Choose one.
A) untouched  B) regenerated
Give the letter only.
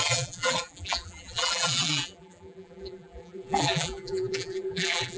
B